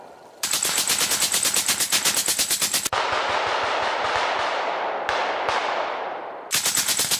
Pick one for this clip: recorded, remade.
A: recorded